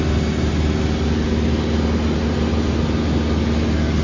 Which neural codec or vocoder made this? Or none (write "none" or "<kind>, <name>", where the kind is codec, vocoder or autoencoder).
none